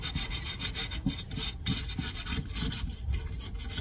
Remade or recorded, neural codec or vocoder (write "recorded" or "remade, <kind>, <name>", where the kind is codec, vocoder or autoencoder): recorded